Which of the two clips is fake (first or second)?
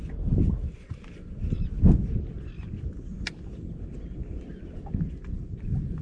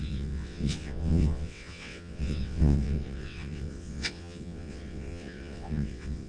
second